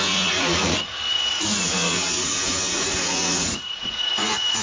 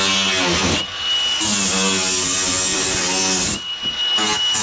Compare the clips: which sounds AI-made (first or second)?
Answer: first